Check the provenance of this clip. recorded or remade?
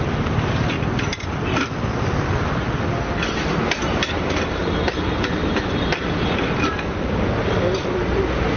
recorded